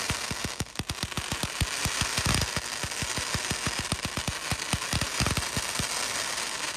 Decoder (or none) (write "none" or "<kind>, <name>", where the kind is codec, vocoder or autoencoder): none